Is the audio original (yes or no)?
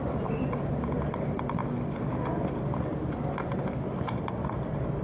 yes